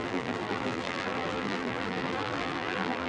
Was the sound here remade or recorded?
remade